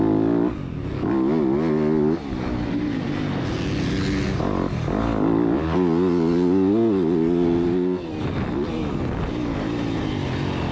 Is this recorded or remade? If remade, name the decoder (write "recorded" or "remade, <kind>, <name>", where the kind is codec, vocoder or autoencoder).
recorded